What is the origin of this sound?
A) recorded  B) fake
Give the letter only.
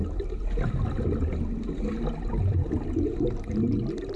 A